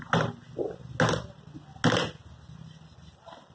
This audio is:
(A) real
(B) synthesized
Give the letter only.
A